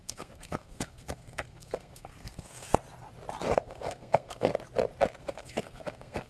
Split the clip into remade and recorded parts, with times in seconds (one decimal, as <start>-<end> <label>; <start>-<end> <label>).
0.0-2.7 remade; 2.7-3.6 recorded; 3.6-4.5 remade; 4.5-5.2 recorded; 5.2-6.3 remade